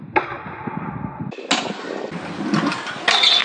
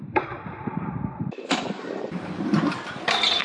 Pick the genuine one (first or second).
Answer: first